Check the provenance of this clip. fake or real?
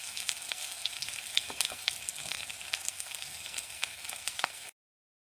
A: fake